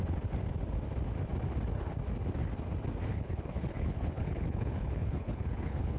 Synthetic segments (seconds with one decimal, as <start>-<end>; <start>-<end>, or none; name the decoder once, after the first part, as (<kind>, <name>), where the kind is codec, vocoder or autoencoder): 3.1-6.0 (codec, HILCodec)